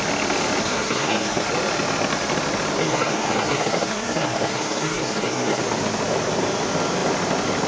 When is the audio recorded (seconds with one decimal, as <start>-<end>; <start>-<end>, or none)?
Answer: 0.0-0.6; 1.5-2.8; 5.6-7.7